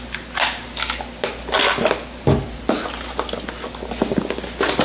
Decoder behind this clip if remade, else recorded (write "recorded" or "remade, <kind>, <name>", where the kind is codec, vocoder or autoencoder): recorded